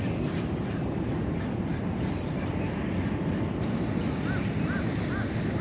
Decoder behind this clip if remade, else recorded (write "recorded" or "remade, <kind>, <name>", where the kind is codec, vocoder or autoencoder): recorded